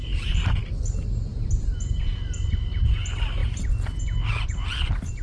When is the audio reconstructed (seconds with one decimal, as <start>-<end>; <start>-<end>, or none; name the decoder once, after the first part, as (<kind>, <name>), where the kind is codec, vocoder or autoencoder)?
1.3-2.0 (vocoder, BigVGAN v2)